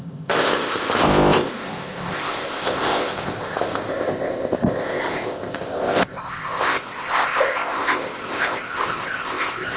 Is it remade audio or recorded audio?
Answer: remade